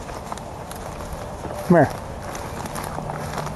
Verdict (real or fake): real